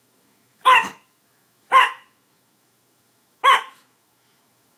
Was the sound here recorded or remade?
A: remade